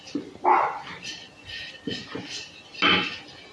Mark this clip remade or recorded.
recorded